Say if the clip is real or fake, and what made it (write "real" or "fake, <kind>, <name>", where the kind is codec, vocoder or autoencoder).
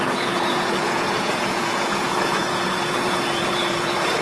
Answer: fake, vocoder, Vocos